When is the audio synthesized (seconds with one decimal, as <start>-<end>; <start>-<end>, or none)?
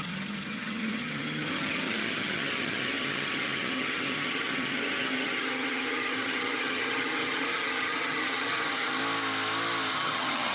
0.0-9.0; 9.9-10.5